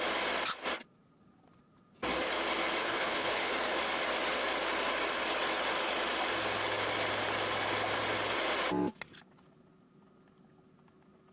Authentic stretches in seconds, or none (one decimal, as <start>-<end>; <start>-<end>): 0.0-2.8; 3.5-11.3